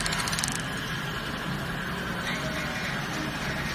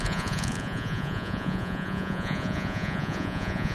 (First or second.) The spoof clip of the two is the second